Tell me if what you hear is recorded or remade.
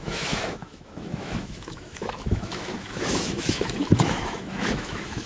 remade